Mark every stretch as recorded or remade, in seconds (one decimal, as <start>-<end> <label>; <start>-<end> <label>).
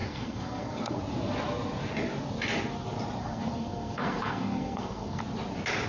0.0-1.0 remade; 1.0-3.2 recorded; 3.2-5.2 remade; 5.2-5.9 recorded